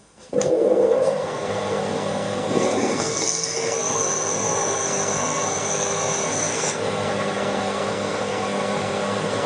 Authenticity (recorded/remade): remade